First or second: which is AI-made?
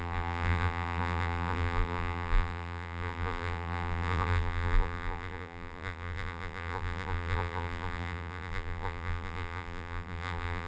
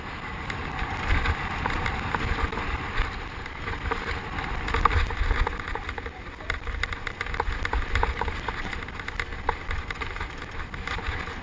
first